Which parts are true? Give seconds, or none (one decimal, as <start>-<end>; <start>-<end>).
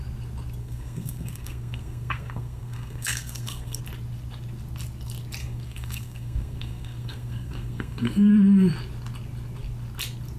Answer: 0.0-0.6; 3.8-5.4; 8.3-10.4